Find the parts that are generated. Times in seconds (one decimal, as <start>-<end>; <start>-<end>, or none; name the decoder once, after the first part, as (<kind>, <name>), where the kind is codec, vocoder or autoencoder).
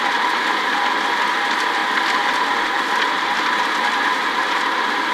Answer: none